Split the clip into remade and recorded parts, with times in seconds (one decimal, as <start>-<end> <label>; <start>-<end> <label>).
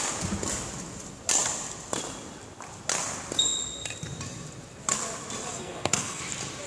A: 0.0-5.5 recorded; 5.5-6.2 remade; 6.2-6.7 recorded